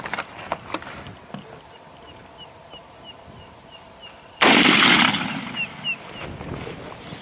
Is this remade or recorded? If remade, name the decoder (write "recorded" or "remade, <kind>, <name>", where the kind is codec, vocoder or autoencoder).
recorded